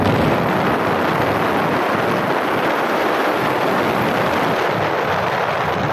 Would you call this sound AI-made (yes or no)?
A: no